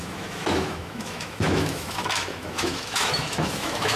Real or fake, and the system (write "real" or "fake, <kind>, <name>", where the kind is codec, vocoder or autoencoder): fake, autoencoder, DAC-VAE